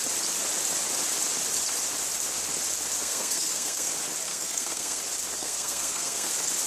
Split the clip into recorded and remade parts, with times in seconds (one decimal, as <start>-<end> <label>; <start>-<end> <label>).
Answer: 0.0-3.0 recorded; 3.0-3.9 remade; 3.9-4.3 recorded; 4.3-5.0 remade; 5.0-5.4 recorded; 5.4-6.3 remade; 6.3-6.7 recorded